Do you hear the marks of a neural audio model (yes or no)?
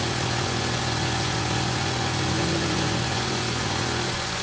yes